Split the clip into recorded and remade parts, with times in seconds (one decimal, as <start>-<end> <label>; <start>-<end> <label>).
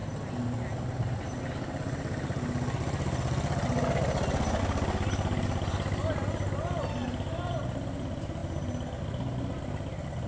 0.0-10.3 recorded